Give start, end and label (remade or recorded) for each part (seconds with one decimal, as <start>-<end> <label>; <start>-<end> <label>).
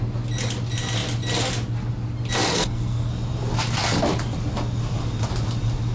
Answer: 0.0-2.5 recorded; 2.5-3.1 remade; 3.1-5.9 recorded